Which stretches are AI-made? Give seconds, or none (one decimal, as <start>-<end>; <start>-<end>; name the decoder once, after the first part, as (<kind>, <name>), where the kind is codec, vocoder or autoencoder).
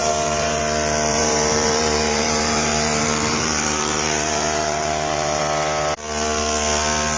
0.0-0.6 (vocoder, BigVGAN v2); 1.1-5.4